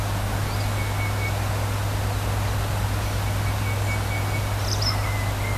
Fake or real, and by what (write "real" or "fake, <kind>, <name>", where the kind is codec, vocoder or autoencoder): real